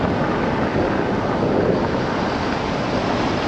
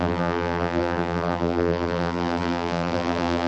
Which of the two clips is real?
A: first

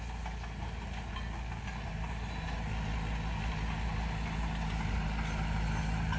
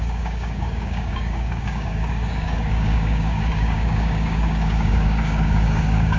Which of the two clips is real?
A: first